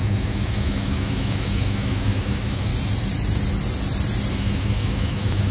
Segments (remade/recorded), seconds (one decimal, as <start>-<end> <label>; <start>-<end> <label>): 0.0-2.7 remade; 2.7-4.3 recorded; 4.3-5.5 remade